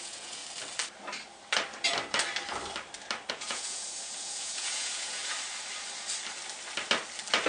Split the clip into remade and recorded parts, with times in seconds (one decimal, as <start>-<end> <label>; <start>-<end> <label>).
0.0-0.4 remade; 0.4-3.3 recorded; 3.3-5.2 remade; 5.2-7.5 recorded